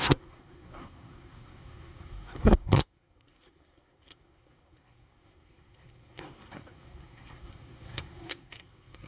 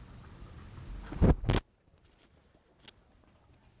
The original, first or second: second